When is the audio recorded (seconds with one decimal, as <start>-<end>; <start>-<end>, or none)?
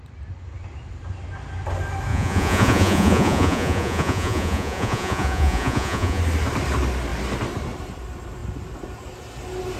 0.0-2.1; 6.2-9.8